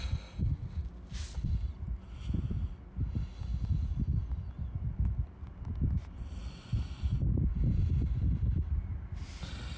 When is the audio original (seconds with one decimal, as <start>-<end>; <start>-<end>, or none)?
0.0-9.8